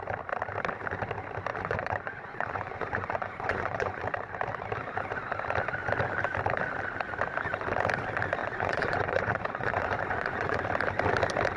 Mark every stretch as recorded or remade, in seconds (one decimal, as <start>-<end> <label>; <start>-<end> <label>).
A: 0.0-1.5 recorded; 1.5-4.0 remade; 4.0-8.4 recorded; 8.4-10.6 remade; 10.6-11.6 recorded